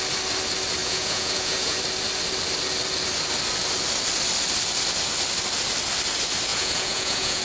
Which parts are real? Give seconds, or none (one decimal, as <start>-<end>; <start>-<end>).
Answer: 0.0-0.8; 1.8-6.5

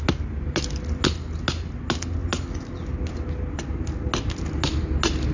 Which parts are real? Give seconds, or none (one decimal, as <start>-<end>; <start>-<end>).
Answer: 0.0-5.3

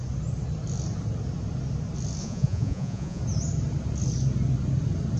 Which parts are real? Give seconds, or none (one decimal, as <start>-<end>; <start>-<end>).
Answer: 0.0-2.2; 3.2-5.2

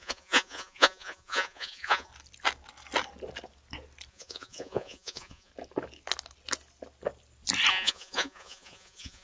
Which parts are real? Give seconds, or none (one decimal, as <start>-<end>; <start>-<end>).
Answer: 2.1-4.1; 5.5-7.7

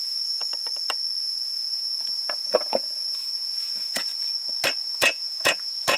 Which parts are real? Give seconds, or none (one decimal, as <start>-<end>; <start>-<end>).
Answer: 0.4-1.2; 4.1-4.8

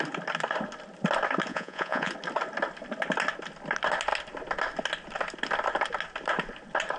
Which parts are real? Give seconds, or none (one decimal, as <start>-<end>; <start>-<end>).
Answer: 0.0-1.5; 2.1-7.0